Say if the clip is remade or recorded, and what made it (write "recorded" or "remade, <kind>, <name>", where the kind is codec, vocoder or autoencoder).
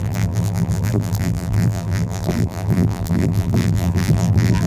remade, vocoder, BigVGAN v2